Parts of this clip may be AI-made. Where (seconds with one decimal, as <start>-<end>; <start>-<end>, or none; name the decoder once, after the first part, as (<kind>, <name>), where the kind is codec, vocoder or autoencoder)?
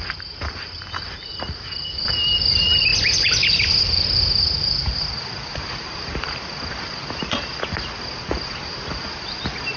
0.0-2.9 (vocoder, BigVGAN v2); 3.5-9.8